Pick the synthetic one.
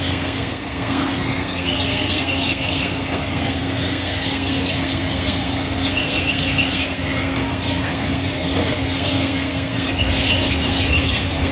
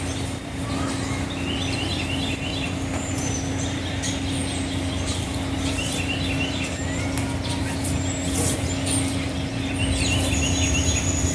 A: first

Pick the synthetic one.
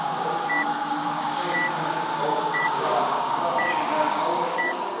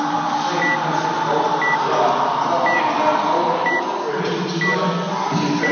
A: first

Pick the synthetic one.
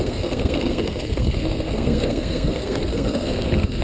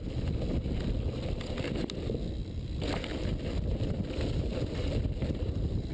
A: first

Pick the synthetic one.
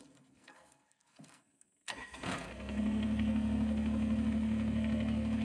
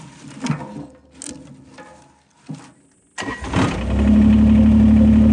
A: first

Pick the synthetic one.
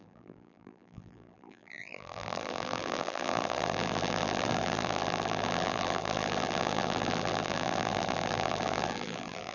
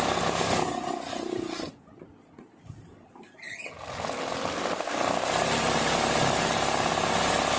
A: first